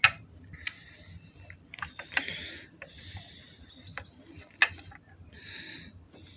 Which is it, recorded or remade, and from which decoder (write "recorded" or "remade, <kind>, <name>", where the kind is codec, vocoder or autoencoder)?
recorded